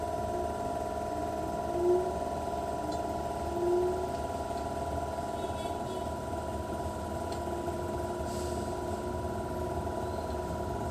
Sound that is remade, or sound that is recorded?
recorded